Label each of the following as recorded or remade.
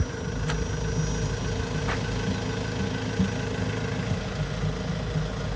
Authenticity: recorded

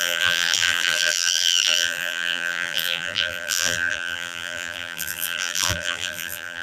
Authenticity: remade